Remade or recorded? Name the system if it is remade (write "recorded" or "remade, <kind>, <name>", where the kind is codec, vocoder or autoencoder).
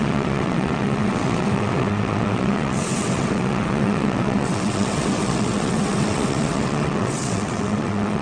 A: remade, vocoder, WaveNeXt